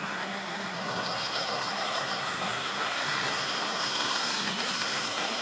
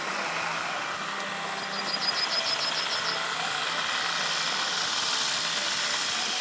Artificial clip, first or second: first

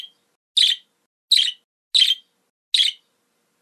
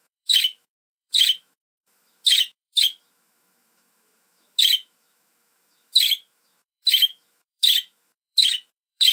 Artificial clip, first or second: second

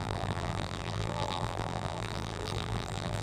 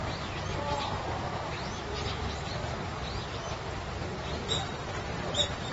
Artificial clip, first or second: first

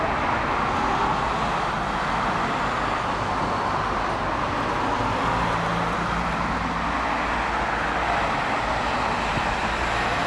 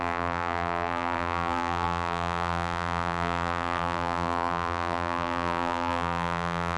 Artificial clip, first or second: second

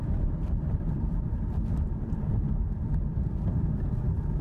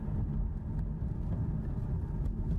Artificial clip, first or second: first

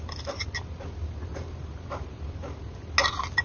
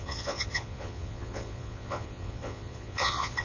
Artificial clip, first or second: second